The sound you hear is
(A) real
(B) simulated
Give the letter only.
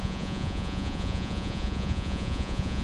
B